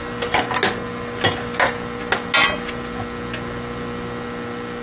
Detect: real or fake real